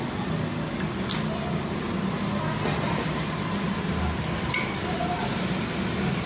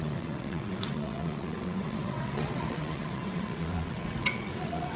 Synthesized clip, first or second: second